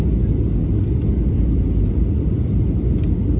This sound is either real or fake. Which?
real